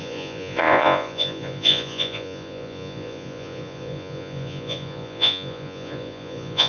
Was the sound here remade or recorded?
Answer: remade